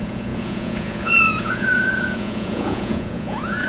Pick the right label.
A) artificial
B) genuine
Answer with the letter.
A